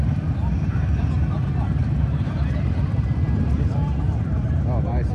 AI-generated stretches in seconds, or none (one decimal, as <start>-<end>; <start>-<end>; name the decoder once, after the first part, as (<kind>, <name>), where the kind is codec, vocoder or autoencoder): 0.4-1.0 (vocoder, BigVGAN v2); 1.8-5.1